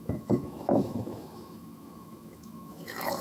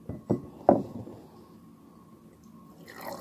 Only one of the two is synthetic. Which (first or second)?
first